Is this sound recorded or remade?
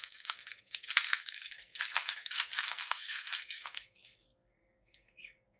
remade